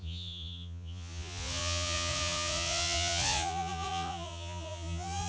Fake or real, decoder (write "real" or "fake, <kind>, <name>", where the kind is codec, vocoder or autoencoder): fake, vocoder, Vocos